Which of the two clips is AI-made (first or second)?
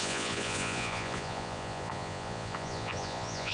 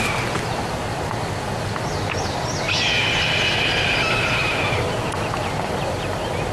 first